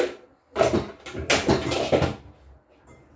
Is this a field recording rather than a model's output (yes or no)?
yes